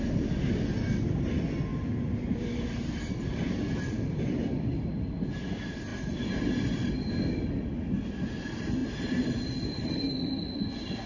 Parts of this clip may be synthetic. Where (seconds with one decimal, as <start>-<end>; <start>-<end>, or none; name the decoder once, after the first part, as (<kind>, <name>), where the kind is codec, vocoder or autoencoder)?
1.7-2.9 (vocoder, BigVGAN v2); 8.8-10.5